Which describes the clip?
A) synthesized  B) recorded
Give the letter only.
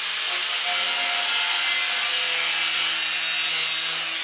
B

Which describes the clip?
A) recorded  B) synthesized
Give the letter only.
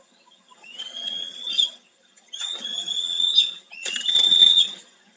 B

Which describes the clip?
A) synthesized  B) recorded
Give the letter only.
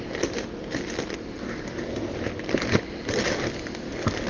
B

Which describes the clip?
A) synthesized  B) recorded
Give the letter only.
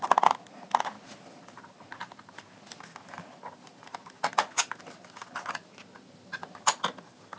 B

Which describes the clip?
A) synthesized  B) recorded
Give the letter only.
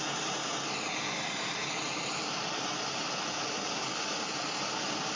B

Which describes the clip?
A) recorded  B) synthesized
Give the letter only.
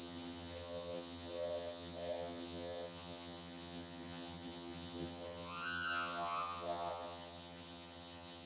B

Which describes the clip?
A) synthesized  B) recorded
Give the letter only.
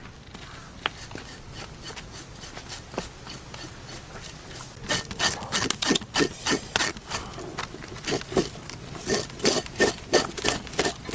B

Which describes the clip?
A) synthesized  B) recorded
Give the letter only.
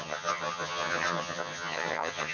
A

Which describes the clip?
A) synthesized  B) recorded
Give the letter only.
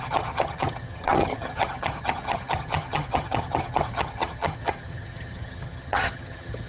A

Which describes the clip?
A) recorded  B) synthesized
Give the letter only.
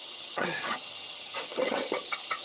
B